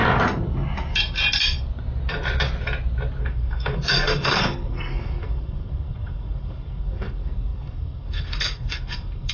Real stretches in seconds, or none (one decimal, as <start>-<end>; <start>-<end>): 0.0-3.2

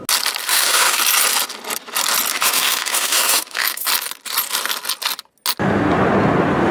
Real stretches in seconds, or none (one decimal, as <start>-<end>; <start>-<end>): 0.0-0.5; 1.0-2.3; 3.9-6.7

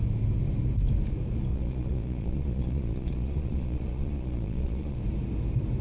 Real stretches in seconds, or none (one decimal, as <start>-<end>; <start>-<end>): 0.0-1.5; 5.0-5.8

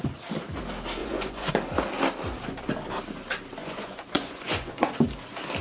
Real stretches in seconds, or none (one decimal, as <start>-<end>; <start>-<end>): 0.0-1.0; 1.5-3.6; 4.9-5.6

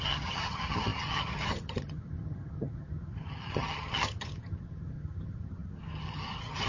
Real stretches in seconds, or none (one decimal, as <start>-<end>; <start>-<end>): none

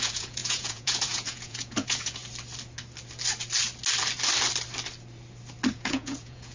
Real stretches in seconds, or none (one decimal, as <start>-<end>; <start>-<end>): 2.2-5.7